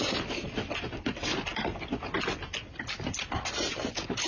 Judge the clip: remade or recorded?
recorded